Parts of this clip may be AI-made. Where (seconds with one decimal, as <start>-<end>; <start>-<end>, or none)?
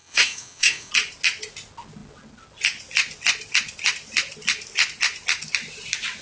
0.0-0.9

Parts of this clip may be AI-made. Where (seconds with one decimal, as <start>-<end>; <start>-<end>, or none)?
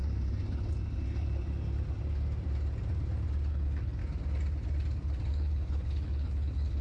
3.5-4.0; 5.3-6.8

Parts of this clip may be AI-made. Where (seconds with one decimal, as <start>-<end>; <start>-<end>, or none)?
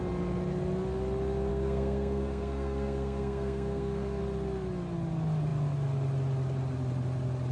1.5-4.2